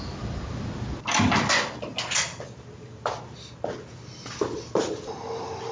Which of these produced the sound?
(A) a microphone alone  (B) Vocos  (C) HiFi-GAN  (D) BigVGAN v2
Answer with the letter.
A